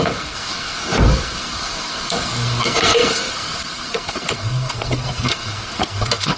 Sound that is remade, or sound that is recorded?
remade